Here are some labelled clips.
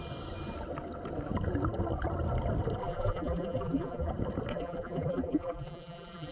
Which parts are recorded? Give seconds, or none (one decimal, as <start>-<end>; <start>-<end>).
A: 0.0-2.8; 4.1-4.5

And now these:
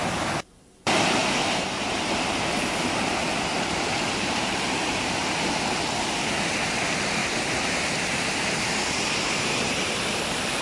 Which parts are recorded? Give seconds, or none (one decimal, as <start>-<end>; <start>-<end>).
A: 0.0-1.2; 1.9-7.2; 10.0-10.6

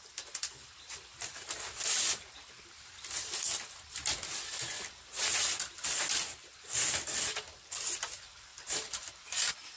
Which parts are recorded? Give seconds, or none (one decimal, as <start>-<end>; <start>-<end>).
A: 0.0-8.5; 9.1-9.8

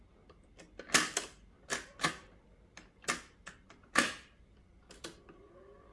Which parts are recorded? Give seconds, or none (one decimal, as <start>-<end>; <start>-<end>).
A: 0.0-5.9

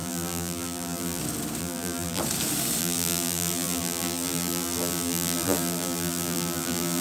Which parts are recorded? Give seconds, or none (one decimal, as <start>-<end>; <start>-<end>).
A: 1.2-1.6; 2.2-2.8